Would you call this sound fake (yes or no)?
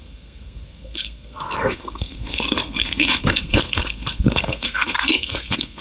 yes